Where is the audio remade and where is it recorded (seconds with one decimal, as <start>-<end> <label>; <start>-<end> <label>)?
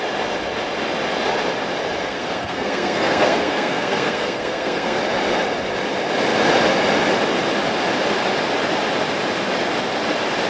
0.0-2.0 recorded; 2.0-5.0 remade; 5.0-10.5 recorded